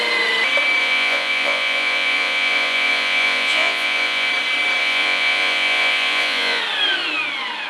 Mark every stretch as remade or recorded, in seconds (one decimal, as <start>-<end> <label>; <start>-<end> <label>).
0.0-0.8 recorded; 0.8-4.3 remade; 4.3-4.8 recorded; 4.8-6.6 remade; 6.6-7.7 recorded